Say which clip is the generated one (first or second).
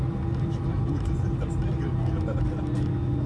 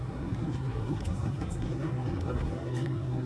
second